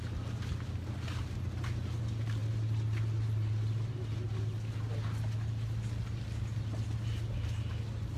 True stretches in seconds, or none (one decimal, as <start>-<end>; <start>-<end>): 0.0-8.2

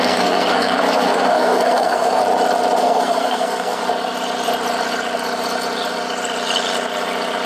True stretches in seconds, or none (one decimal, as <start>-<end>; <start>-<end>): 2.2-2.8; 3.8-7.5

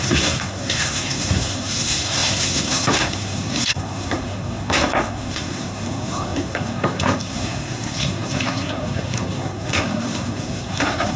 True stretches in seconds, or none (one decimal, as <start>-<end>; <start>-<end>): none